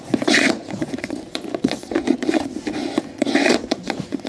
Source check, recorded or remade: remade